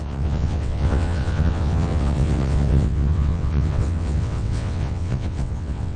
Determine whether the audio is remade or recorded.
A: remade